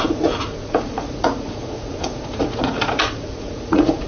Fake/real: fake